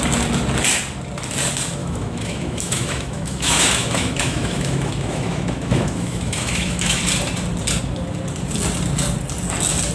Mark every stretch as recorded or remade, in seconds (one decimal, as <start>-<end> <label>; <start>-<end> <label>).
0.0-1.8 recorded; 1.8-7.0 remade; 7.0-9.9 recorded

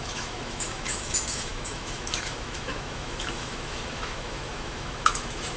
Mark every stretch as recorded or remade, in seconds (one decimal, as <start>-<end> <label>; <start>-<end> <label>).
0.0-5.6 remade

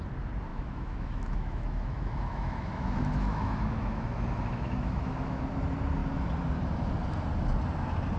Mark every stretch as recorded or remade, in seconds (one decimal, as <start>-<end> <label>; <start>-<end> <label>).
0.0-0.5 recorded; 0.5-5.4 remade; 5.4-8.2 recorded

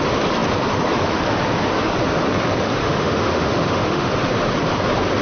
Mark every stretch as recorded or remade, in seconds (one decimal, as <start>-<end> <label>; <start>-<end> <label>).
0.0-2.8 recorded; 2.8-4.1 remade; 4.1-5.2 recorded

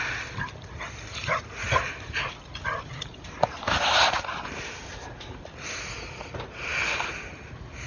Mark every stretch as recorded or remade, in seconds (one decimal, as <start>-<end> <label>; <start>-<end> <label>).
0.0-7.9 recorded

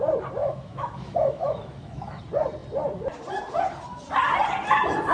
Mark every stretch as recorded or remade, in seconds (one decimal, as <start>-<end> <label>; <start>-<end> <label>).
0.0-0.4 recorded; 0.4-2.2 remade; 2.2-5.1 recorded

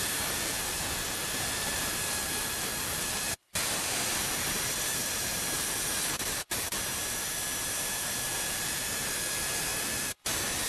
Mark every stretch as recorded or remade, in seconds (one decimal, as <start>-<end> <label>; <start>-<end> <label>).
0.0-10.7 recorded